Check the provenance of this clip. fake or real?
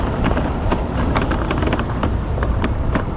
fake